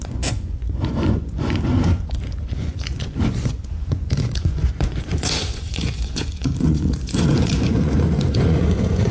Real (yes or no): no